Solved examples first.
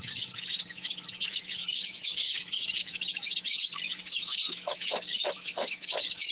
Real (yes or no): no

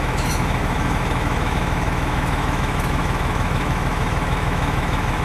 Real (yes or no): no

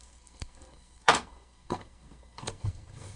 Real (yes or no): no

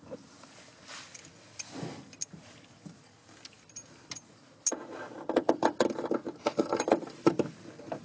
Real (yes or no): yes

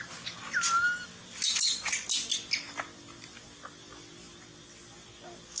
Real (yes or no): yes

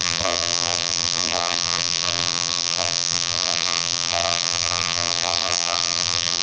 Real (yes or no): no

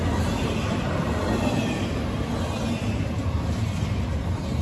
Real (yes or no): yes